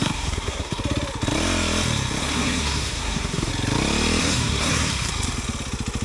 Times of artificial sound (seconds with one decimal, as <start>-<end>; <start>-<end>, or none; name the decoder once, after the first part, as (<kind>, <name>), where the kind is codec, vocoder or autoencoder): 0.0-0.8 (codec, SNAC); 2.2-3.5; 4.2-5.1